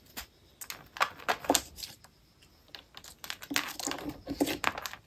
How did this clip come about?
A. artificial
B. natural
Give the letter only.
B